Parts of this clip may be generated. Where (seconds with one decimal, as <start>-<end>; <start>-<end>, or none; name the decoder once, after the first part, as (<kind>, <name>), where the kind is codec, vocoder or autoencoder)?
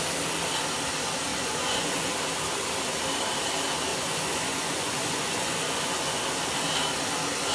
1.3-2.1 (vocoder, Vocos); 3.9-6.2